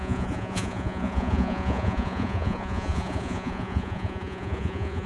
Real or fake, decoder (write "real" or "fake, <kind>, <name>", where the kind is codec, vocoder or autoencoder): fake, vocoder, Vocos